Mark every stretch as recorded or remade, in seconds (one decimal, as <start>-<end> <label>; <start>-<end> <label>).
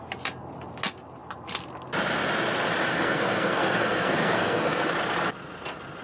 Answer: 0.0-2.9 recorded; 2.9-4.9 remade; 4.9-6.0 recorded